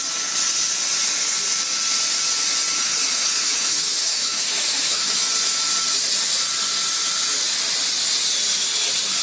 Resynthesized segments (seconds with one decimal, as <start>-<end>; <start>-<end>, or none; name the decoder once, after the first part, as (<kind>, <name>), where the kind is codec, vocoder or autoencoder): 2.8-5.2 (autoencoder, DAC-VAE)